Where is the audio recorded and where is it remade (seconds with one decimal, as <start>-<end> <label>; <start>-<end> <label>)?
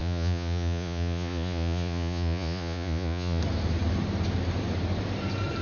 0.0-3.4 remade; 3.4-5.6 recorded